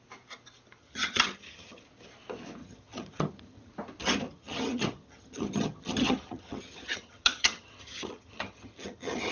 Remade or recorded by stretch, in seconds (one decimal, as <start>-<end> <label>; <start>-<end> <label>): 0.0-0.8 recorded; 0.8-1.8 remade; 1.8-2.6 recorded; 2.6-3.7 remade; 3.7-4.3 recorded; 4.3-9.3 remade